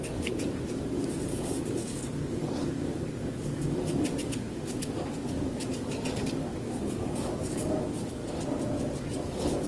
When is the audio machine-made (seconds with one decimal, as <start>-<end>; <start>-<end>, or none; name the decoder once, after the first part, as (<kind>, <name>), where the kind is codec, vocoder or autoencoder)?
0.0-8.2 (codec, DAC); 9.0-9.7